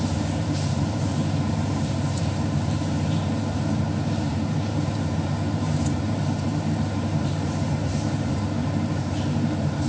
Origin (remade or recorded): remade